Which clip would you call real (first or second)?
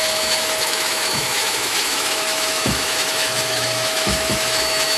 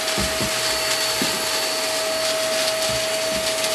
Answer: second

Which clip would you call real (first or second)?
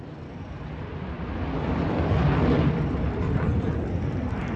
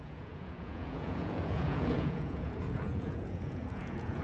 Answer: first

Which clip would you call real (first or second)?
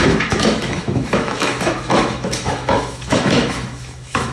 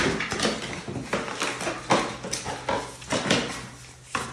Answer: second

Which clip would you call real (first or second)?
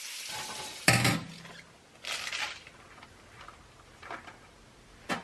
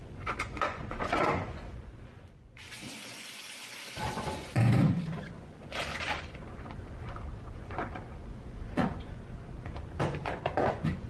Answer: first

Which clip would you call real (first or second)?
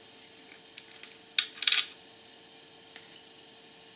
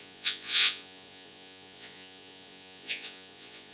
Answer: first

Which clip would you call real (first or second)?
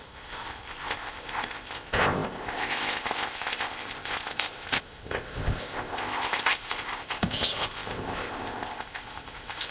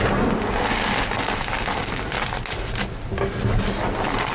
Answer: second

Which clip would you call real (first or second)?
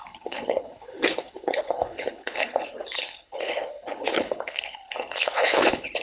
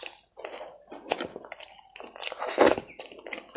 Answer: second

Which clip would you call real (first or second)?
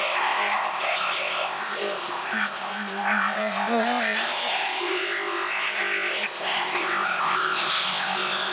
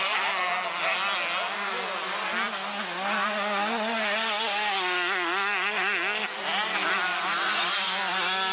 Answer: second